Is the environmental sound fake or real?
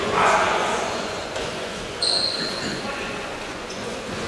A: fake